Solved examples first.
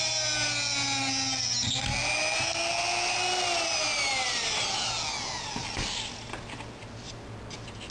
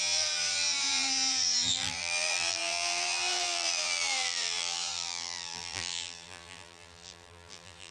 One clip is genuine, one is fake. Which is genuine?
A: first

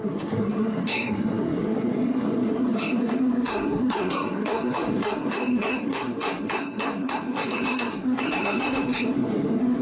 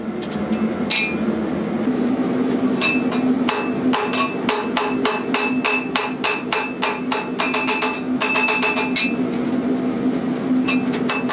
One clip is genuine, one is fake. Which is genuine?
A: second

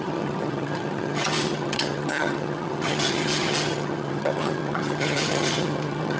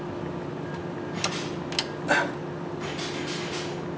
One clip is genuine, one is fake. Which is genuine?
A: second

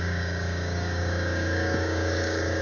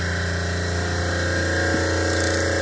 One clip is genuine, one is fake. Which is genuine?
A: second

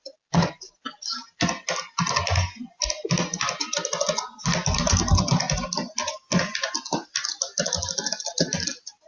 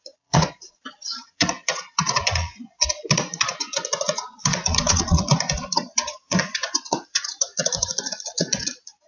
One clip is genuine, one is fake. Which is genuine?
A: first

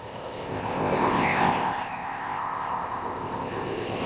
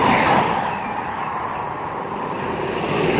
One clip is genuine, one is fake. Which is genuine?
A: second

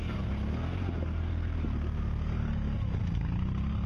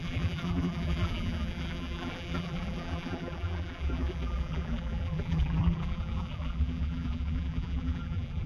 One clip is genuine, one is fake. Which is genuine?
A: first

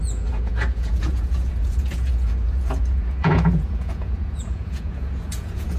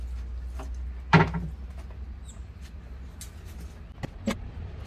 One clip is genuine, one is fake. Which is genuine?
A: second